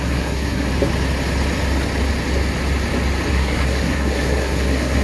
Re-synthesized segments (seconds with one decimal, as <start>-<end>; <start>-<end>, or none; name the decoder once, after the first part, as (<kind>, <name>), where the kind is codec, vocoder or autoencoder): 0.0-0.7 (codec, SNAC); 3.3-5.0